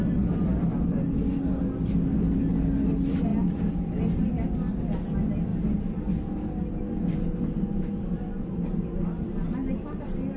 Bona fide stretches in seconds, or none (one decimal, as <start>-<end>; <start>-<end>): 0.0-10.4